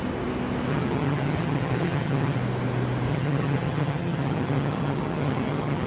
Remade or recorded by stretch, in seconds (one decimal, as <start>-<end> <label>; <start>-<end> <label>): 0.0-0.7 recorded; 0.7-2.4 remade; 2.4-3.1 recorded; 3.1-5.9 remade